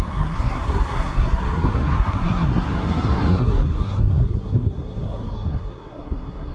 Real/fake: fake